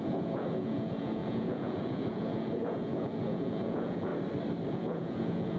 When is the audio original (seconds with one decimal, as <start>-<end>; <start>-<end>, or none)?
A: 4.1-4.7